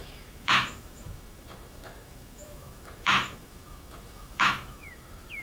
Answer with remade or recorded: remade